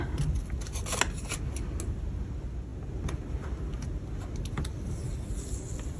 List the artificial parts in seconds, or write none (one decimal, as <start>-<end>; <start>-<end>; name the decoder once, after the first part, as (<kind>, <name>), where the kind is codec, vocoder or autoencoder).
none